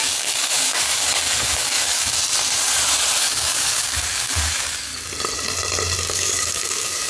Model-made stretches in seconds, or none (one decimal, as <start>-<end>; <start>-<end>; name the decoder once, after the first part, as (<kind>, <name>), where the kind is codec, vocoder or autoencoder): 0.0-2.2 (codec, DAC); 3.2-4.9; 6.0-7.1